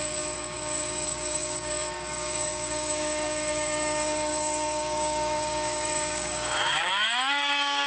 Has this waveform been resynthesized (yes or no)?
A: yes